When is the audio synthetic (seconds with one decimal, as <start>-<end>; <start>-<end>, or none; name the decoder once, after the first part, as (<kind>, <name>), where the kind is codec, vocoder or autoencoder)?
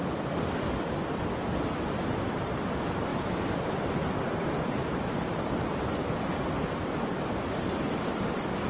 3.1-5.9 (vocoder, BigVGAN v2)